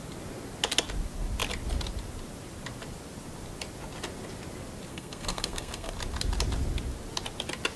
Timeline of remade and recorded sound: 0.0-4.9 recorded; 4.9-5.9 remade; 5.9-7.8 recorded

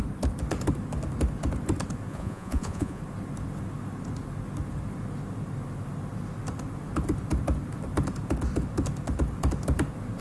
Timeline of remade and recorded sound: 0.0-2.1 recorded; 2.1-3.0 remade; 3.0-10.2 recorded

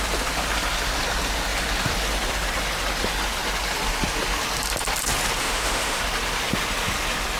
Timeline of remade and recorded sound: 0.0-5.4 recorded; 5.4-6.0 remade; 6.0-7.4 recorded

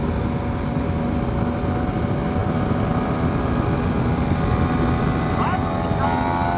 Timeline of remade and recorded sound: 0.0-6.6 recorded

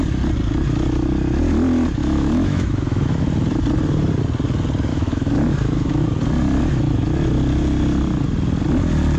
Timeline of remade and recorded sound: 0.0-2.0 recorded; 2.0-3.2 remade; 3.2-4.9 recorded; 4.9-6.0 remade; 6.0-9.2 recorded

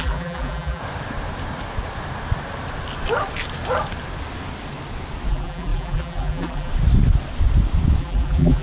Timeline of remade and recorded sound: 0.0-0.8 remade; 0.8-5.3 recorded; 5.3-6.7 remade; 6.7-8.0 recorded; 8.0-8.6 remade